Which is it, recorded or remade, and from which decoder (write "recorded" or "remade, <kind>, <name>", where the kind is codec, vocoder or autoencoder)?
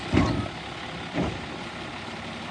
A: recorded